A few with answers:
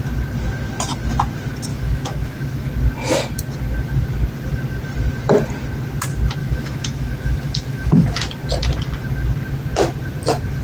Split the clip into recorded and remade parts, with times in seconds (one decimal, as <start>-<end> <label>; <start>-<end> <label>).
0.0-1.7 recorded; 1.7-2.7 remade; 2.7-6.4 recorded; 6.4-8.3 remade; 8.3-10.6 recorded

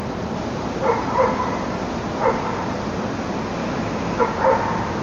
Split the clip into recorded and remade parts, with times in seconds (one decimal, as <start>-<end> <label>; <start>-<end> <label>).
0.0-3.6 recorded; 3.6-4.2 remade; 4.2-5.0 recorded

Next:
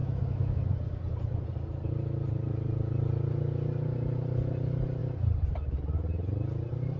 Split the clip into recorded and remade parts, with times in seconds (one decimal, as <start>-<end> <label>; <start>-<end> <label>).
0.0-0.7 remade; 0.7-7.0 recorded

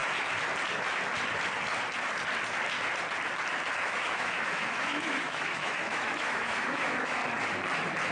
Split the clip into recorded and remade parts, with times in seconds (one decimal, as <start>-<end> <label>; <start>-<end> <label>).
0.0-3.8 recorded; 3.8-7.2 remade; 7.2-8.1 recorded